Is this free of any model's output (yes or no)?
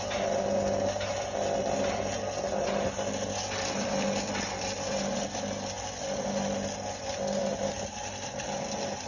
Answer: yes